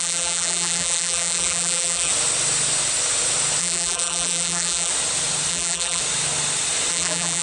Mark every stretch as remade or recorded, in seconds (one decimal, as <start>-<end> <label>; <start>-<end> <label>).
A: 0.0-2.1 remade; 2.1-3.6 recorded; 3.6-4.9 remade; 4.9-5.5 recorded; 5.5-6.0 remade; 6.0-6.9 recorded; 6.9-7.4 remade